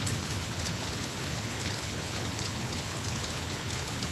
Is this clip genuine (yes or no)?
no